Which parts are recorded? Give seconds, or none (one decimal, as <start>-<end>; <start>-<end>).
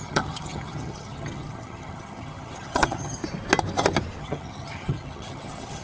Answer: 3.2-4.2